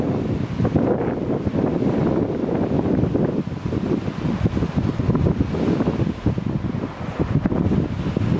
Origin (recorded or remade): recorded